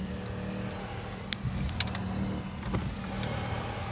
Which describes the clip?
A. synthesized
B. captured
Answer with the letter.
B